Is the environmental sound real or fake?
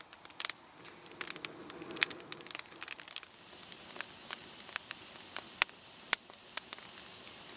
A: real